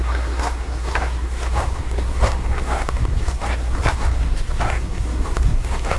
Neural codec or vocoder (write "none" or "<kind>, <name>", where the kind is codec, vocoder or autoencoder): codec, SNAC